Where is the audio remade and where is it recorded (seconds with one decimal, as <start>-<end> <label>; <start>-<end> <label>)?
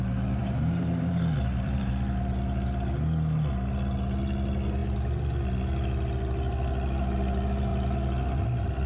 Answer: 0.0-0.4 recorded; 0.4-1.9 remade; 1.9-8.9 recorded